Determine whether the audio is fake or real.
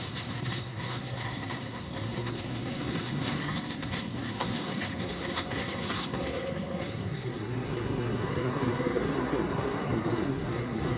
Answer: fake